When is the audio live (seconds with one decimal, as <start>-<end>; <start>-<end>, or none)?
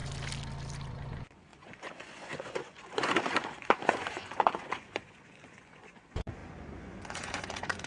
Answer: 0.0-0.9